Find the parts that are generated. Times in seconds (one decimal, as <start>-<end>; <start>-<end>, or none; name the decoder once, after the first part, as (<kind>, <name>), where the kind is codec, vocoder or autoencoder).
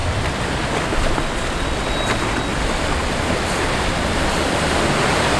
0.0-1.3 (vocoder, BigVGAN v2); 2.5-5.0